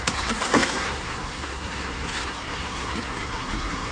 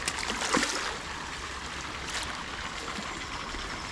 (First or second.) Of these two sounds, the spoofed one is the first